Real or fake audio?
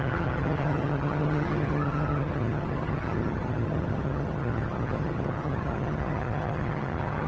fake